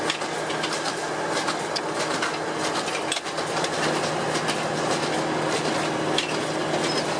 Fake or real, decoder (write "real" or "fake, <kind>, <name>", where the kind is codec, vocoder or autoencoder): real